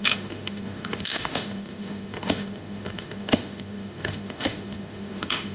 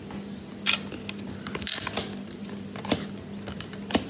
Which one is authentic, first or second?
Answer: second